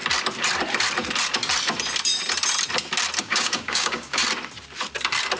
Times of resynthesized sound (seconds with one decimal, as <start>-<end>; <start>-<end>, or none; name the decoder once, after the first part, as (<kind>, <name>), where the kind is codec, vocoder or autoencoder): 3.2-4.2 (codec, DAC)